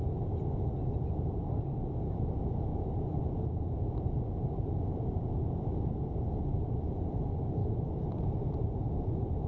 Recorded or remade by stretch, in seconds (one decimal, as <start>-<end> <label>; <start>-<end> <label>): 0.0-2.7 recorded; 2.7-5.4 remade; 5.4-7.6 recorded; 7.6-9.0 remade; 9.0-9.5 recorded